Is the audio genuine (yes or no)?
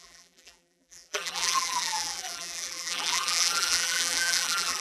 no